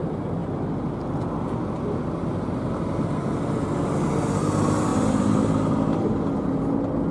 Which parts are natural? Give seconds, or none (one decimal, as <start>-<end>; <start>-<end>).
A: 0.0-4.9; 6.6-7.1